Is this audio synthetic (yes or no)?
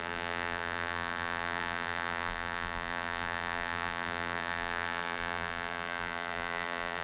yes